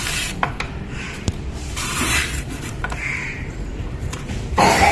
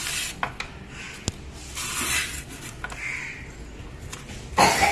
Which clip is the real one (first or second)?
second